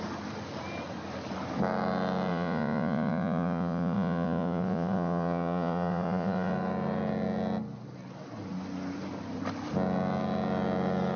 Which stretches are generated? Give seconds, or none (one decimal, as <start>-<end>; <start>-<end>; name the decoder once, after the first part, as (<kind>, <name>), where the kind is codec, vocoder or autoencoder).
2.3-6.5 (vocoder, Vocos)